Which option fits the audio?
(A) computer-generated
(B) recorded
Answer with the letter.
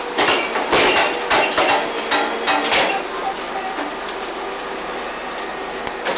B